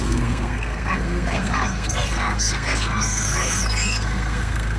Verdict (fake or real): fake